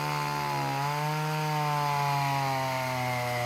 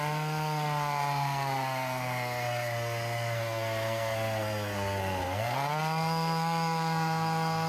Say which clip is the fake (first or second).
second